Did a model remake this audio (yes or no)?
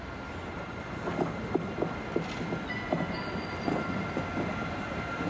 no